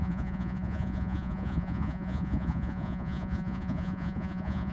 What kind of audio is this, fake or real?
fake